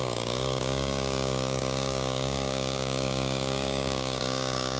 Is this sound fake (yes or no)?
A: yes